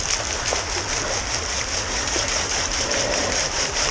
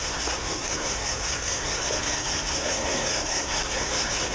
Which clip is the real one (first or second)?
first